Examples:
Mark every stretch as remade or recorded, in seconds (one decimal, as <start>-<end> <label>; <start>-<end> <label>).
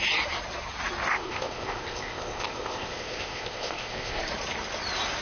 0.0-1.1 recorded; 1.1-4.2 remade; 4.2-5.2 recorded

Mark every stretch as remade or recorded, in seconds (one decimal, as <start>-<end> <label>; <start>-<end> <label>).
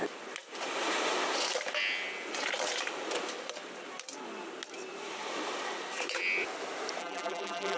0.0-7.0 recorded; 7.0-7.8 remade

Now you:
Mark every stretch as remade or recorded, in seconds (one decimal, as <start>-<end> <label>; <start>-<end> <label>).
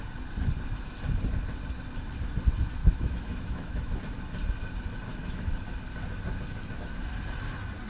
0.0-2.8 recorded; 2.8-4.0 remade; 4.0-5.1 recorded; 5.1-5.7 remade; 5.7-7.9 recorded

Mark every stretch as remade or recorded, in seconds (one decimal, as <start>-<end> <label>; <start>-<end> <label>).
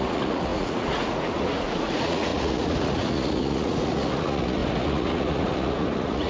0.0-6.3 remade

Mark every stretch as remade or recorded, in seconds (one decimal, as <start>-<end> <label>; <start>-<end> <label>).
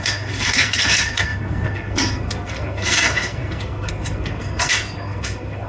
0.0-5.7 remade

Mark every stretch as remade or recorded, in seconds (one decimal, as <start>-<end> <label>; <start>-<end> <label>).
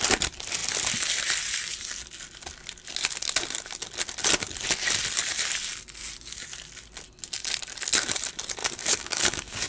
0.0-8.6 recorded; 8.6-9.7 remade